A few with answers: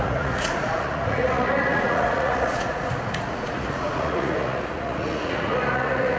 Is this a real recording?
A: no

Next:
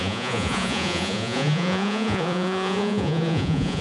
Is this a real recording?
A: no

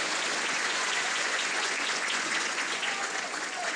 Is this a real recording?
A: no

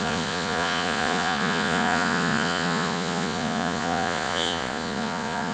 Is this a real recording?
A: no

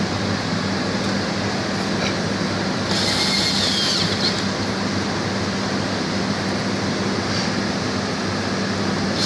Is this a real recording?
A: yes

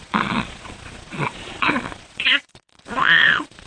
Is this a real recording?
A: no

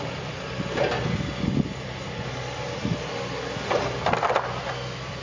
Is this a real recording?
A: yes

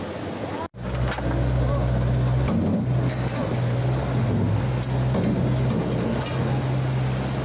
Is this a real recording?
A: yes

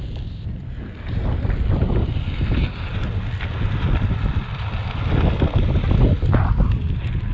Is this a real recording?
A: yes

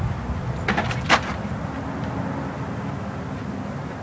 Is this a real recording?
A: yes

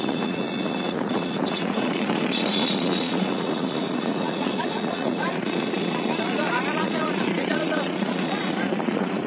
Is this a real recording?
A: no